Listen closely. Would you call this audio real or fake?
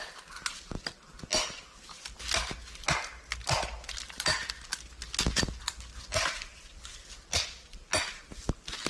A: real